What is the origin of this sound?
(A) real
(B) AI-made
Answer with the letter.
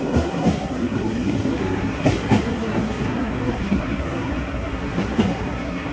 B